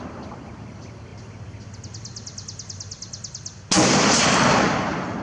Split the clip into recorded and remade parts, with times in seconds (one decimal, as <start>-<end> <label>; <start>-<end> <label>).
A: 0.0-5.2 recorded